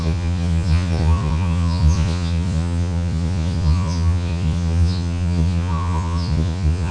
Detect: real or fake fake